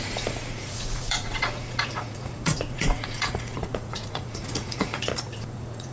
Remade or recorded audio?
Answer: remade